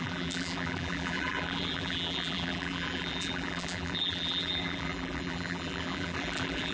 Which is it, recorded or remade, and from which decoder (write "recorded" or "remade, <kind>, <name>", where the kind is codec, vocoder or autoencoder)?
remade, vocoder, BigVGAN v2